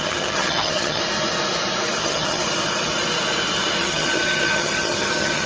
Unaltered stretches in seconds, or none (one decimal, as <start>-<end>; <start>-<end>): 1.0-2.0; 2.4-3.8